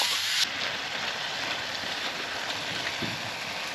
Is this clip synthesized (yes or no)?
no